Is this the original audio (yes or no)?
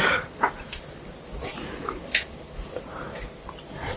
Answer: yes